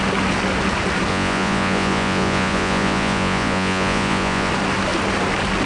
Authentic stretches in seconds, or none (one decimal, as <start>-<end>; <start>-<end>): 0.0-1.1; 4.5-5.7